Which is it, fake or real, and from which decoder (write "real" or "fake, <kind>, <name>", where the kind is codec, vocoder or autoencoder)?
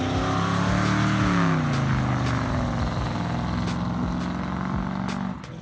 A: real